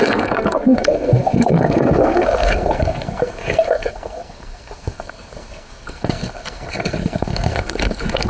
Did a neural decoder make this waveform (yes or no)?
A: yes